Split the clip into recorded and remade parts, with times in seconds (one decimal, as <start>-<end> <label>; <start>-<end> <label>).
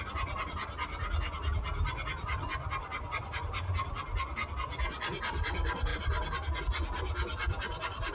0.0-8.1 recorded